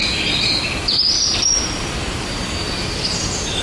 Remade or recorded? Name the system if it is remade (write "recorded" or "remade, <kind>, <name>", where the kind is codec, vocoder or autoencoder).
recorded